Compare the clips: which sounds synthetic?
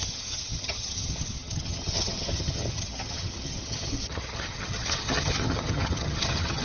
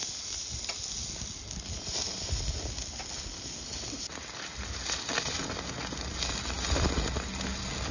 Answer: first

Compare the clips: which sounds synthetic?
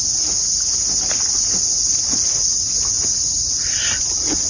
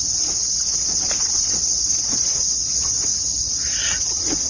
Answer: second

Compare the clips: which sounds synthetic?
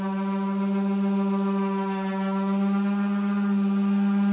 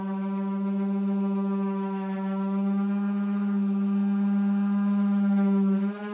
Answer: second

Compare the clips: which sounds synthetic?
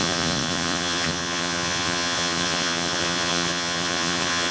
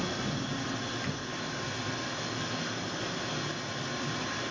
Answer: first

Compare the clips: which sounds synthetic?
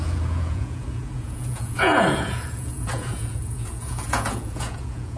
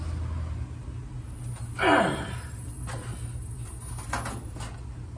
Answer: first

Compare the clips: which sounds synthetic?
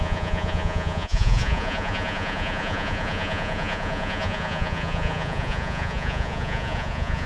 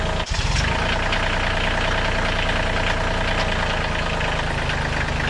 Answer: first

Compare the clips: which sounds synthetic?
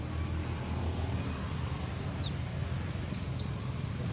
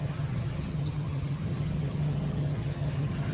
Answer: second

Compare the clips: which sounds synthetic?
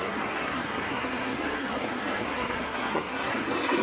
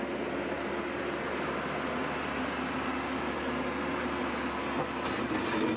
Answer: first